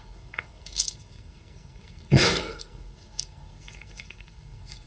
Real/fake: fake